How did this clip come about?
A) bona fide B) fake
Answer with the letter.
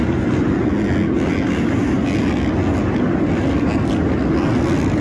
A